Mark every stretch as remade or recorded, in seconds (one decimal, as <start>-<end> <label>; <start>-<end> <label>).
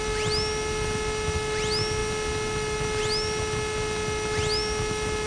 0.0-5.3 recorded